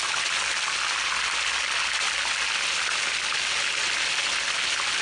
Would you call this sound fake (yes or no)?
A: no